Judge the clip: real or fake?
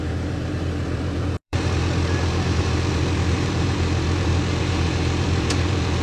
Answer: fake